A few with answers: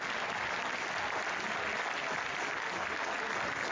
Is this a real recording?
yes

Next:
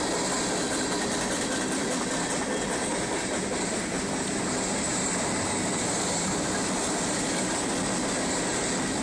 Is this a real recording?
yes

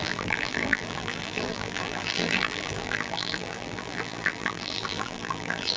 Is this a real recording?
no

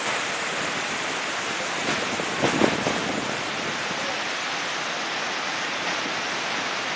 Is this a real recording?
yes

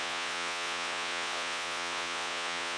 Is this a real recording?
no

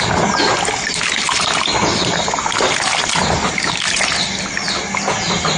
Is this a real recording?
yes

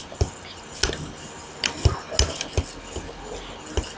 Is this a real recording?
yes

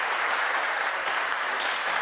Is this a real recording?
no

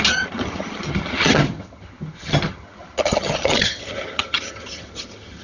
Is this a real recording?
no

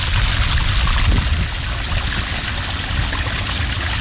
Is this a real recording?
yes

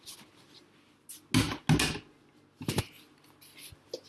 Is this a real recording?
yes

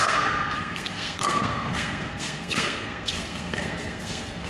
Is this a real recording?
no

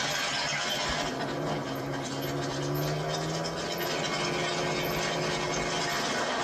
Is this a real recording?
yes